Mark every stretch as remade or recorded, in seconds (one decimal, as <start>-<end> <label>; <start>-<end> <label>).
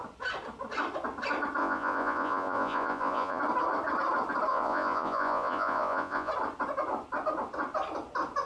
0.0-1.6 recorded; 1.6-3.4 remade; 3.4-4.5 recorded; 4.5-6.3 remade; 6.3-8.5 recorded